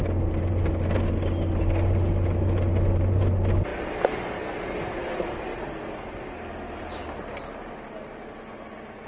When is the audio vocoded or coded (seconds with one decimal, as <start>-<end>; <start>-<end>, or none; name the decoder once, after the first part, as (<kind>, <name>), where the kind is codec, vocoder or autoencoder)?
none